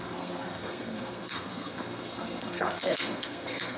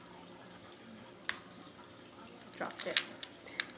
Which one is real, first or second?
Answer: second